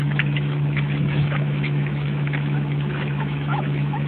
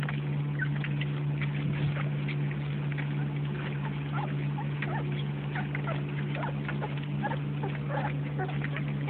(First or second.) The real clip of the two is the second